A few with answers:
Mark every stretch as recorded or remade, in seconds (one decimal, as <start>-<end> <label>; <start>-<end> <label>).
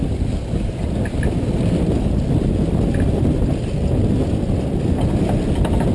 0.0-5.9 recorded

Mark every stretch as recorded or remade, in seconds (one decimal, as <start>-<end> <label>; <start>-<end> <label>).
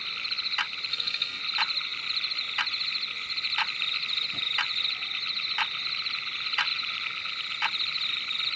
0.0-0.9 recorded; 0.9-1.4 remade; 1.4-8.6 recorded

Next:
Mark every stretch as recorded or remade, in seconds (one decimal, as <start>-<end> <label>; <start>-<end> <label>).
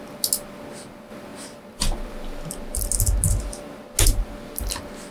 0.0-5.1 recorded